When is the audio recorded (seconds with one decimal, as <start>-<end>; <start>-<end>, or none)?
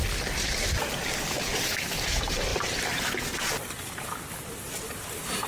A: 0.0-5.5